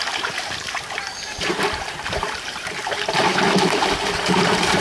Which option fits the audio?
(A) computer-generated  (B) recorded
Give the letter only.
A